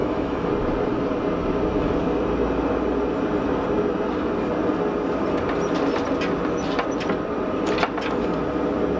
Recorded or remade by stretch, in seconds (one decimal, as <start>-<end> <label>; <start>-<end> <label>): 0.0-0.5 remade; 0.5-9.0 recorded